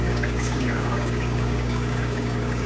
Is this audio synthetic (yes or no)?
yes